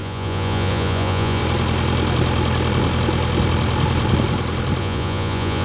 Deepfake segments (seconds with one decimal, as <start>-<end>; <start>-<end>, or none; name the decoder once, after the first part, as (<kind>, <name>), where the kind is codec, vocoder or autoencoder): 0.0-1.4 (vocoder, Vocos); 4.8-5.6